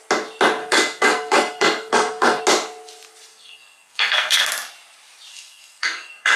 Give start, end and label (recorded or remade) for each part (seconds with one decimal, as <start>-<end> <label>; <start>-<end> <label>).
0.0-0.6 recorded; 0.6-2.4 remade; 2.4-3.3 recorded; 3.3-4.5 remade; 4.5-5.3 recorded; 5.3-6.4 remade